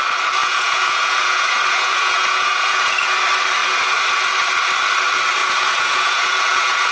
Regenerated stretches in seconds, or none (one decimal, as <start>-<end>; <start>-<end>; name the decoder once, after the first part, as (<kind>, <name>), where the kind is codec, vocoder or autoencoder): 0.4-3.2 (vocoder, Vocos); 5.4-6.9